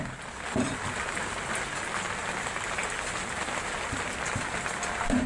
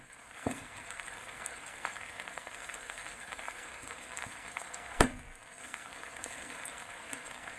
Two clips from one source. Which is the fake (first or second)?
second